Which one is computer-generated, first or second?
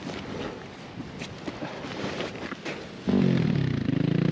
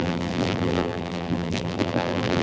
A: second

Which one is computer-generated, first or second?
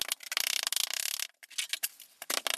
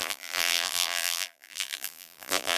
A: second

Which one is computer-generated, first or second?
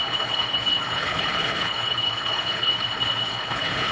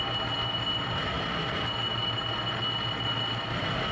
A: first